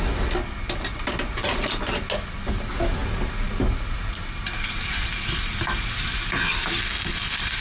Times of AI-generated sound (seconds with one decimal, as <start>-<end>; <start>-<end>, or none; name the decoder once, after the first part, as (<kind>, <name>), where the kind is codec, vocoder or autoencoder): none